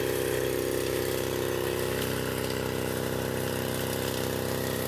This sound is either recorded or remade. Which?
recorded